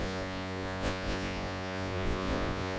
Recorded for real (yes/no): no